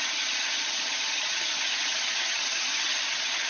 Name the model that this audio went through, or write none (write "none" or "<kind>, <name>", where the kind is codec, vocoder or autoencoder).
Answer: vocoder, HiFi-GAN